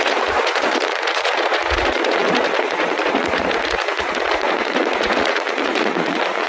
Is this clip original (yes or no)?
no